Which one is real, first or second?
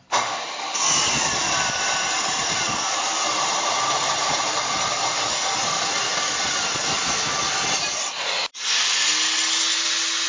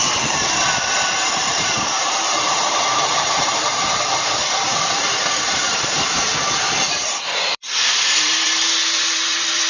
first